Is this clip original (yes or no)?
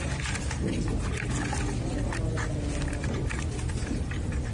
yes